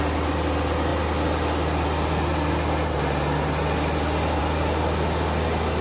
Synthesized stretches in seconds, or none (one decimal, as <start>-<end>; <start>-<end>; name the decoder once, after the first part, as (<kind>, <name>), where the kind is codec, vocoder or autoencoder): none